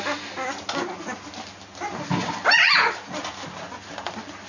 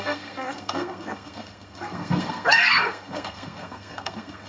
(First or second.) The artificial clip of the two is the second